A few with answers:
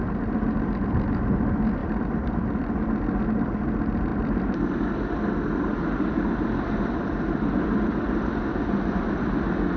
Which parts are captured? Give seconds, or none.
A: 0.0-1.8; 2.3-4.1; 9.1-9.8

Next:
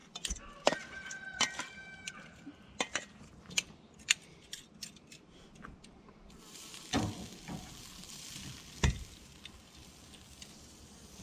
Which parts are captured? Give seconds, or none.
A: 0.0-2.1

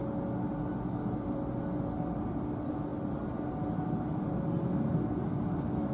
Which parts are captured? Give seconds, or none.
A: 0.0-5.9

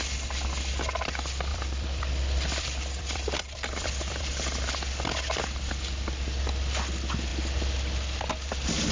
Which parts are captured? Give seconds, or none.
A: 0.0-1.5; 4.7-8.9

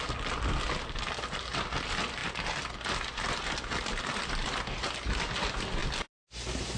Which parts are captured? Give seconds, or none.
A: 0.0-6.8

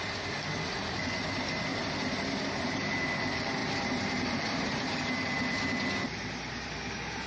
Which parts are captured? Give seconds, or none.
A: 0.0-1.7; 2.9-3.6; 5.1-7.3

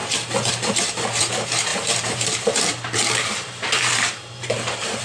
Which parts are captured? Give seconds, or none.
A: 0.0-0.5